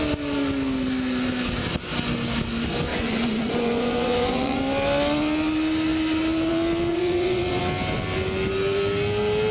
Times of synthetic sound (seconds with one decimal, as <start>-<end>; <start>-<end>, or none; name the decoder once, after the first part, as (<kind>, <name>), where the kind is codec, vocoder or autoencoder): 2.9-4.6 (vocoder, Vocos); 6.9-7.6